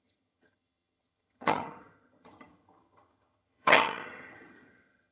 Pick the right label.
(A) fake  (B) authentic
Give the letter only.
A